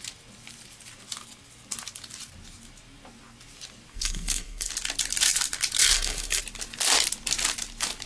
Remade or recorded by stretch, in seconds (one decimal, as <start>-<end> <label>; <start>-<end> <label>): 0.0-3.9 recorded; 3.9-4.7 remade; 4.7-5.8 recorded; 5.8-6.4 remade; 6.4-8.1 recorded